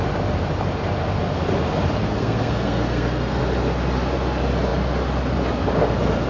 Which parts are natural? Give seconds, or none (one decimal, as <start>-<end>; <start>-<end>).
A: 0.0-2.0; 3.4-6.3

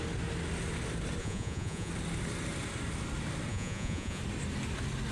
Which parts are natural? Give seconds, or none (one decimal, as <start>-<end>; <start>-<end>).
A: 0.0-1.2; 1.9-3.5; 4.2-5.1

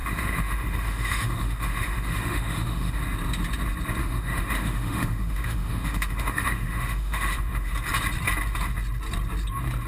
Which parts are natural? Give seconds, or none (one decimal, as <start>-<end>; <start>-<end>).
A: 3.0-4.0; 7.7-9.9